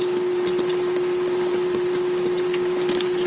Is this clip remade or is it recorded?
remade